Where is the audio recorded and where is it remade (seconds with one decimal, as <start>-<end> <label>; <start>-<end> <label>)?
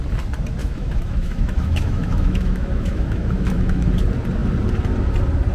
0.0-0.6 recorded; 0.6-3.9 remade; 3.9-5.5 recorded